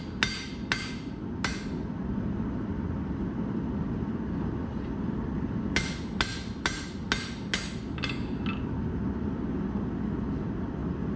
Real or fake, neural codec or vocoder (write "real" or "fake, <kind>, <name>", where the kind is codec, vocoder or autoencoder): real